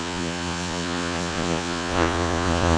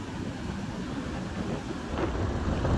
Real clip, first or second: second